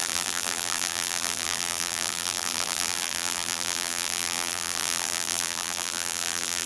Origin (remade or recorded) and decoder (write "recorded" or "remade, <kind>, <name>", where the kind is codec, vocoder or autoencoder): remade, vocoder, BigVGAN v2